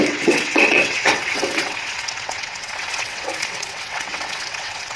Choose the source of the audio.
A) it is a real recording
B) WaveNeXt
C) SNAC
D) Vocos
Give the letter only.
B